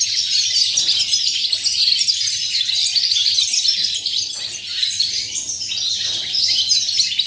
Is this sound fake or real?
real